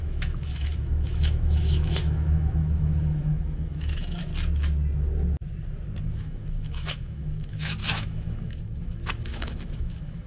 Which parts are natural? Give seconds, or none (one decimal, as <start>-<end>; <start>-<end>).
4.3-6.0